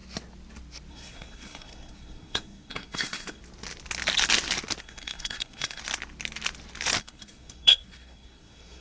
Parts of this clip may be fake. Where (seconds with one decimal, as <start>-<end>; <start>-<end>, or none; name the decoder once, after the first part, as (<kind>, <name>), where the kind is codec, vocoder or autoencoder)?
0.9-3.4 (codec, SNAC); 4.8-5.8; 7.0-8.8